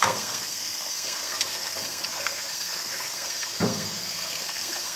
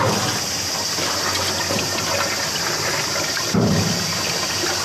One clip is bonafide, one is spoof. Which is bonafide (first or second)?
second